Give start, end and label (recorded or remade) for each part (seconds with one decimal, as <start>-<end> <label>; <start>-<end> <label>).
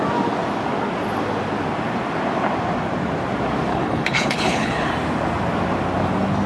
0.0-3.7 recorded; 3.7-4.9 remade; 4.9-6.5 recorded